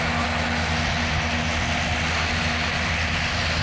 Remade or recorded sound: recorded